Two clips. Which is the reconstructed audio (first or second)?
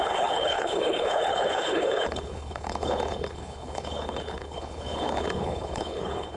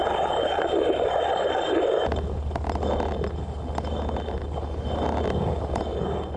first